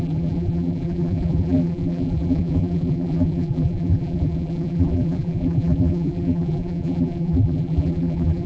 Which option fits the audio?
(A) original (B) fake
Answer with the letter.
B